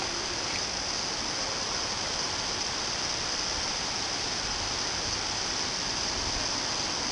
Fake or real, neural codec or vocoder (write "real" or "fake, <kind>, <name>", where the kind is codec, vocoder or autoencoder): real